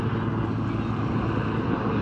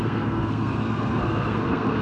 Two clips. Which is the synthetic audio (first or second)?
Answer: second